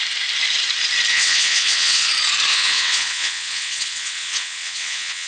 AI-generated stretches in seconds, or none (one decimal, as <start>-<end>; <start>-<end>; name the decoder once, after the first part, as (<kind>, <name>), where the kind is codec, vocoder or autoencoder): 1.1-2.1 (vocoder, WaveNeXt); 2.5-5.3